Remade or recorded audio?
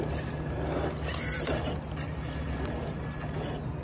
recorded